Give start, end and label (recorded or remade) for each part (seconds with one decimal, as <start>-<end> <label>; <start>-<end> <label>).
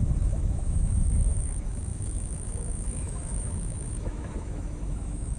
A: 0.0-5.4 remade